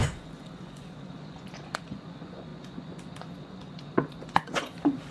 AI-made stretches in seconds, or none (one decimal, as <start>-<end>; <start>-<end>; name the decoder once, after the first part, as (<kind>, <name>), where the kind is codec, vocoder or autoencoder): 0.0-5.1 (vocoder, Vocos)